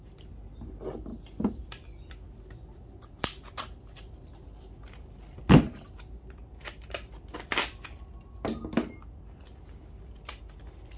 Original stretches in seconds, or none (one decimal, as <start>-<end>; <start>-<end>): 0.0-11.0